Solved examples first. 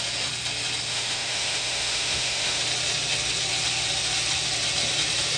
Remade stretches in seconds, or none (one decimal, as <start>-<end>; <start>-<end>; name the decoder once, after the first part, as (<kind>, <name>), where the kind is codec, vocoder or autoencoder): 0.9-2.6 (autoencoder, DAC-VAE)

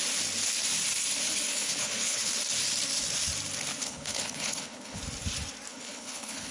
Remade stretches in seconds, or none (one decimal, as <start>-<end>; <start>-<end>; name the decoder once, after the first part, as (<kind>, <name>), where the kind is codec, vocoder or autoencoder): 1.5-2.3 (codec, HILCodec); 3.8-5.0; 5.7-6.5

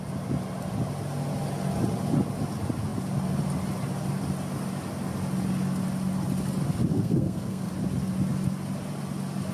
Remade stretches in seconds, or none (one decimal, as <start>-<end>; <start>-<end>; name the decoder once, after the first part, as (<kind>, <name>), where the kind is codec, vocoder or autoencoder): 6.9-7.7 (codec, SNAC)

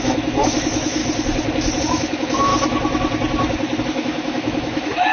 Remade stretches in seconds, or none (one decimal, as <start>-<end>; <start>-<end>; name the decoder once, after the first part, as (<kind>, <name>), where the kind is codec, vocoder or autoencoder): 0.0-1.0 (autoencoder, DAC-VAE); 1.8-2.5; 3.8-5.1

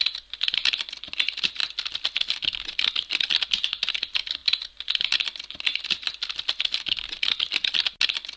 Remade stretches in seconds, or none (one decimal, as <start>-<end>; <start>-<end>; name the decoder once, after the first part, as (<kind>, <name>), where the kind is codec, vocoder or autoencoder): none